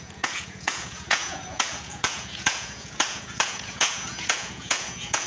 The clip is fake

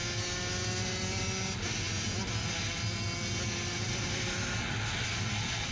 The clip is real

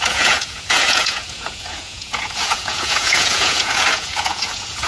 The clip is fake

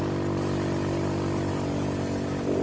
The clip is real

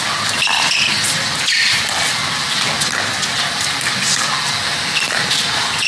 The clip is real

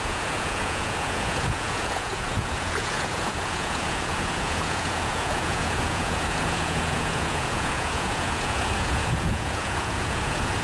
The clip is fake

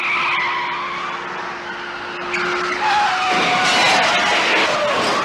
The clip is real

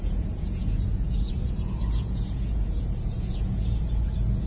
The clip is fake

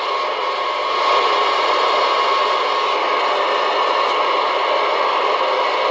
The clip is real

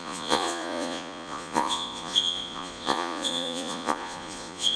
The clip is fake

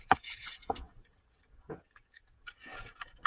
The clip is fake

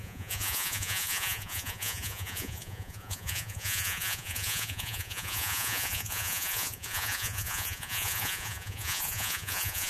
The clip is fake